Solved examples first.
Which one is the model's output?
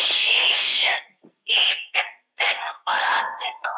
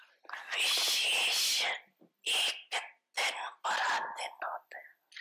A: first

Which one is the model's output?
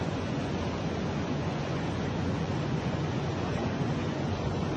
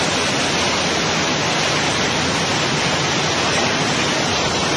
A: first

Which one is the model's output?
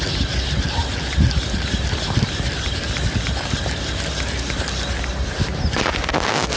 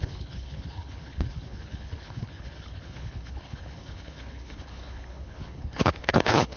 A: second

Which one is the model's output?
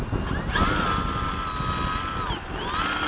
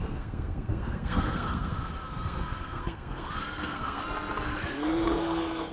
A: second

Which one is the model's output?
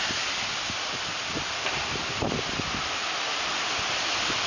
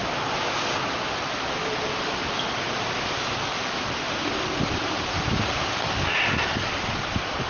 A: first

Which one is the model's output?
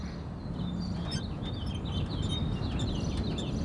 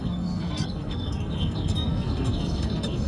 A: second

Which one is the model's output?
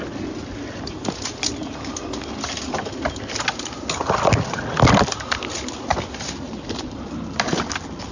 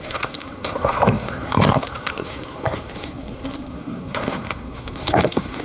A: second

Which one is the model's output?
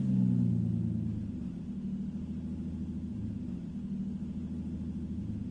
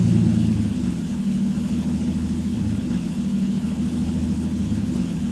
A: second